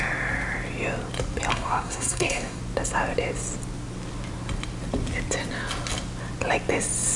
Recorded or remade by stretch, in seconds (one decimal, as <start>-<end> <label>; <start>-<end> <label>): 0.0-1.5 recorded; 1.5-2.6 remade; 2.6-7.2 recorded